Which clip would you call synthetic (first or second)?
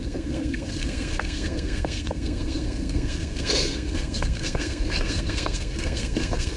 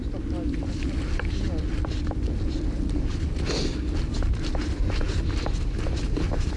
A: first